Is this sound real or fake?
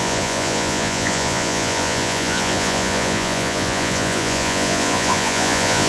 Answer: fake